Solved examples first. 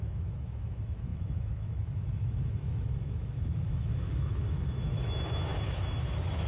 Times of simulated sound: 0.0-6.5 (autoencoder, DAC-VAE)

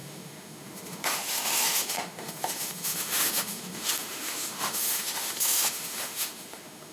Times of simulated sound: 0.0-6.9 (autoencoder, DAC-VAE)

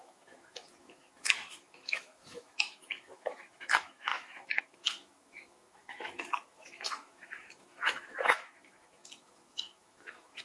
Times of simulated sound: 0.0-10.4 (autoencoder, DAC-VAE)

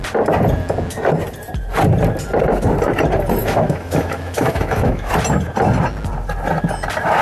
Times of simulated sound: 3.4-5.1 (autoencoder, DAC-VAE)

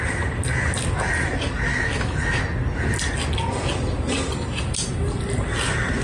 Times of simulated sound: 1.7-2.4 (autoencoder, DAC-VAE)

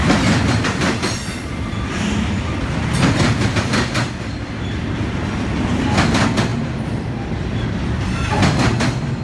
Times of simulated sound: none